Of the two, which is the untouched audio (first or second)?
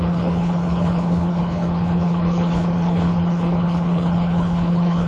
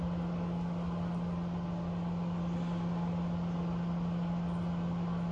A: second